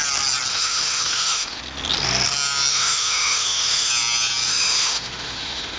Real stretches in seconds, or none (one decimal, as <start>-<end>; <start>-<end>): 0.0-0.5; 1.6-2.7; 3.9-4.5